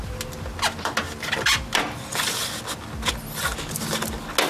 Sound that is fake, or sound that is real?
real